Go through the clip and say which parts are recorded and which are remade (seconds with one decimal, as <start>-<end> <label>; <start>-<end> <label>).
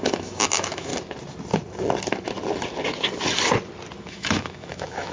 0.0-0.9 remade; 0.9-4.0 recorded; 4.0-5.1 remade